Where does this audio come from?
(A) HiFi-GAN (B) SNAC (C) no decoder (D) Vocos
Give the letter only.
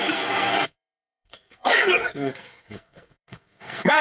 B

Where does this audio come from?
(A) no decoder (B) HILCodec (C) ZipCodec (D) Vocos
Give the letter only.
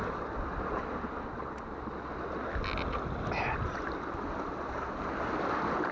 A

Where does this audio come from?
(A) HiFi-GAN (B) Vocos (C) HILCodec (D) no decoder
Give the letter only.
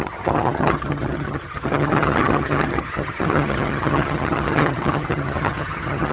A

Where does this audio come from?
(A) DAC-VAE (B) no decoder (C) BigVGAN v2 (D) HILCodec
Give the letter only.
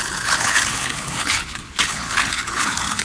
D